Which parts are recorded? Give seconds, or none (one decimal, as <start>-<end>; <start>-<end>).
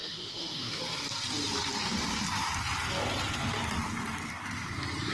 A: 0.8-5.1